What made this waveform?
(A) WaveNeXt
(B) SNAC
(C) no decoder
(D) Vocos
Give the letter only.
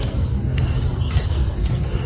B